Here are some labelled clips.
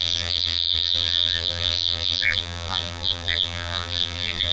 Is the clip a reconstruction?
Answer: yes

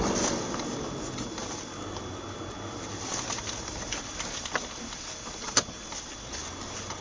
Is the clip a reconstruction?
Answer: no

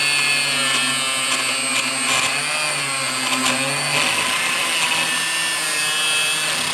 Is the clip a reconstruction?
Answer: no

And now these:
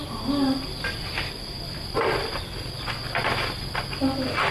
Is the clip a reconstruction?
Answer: no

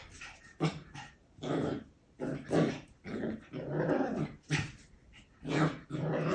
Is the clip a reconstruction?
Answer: yes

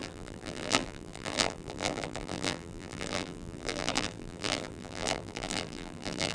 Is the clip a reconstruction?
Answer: yes